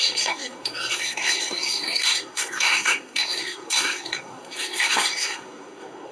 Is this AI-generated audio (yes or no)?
yes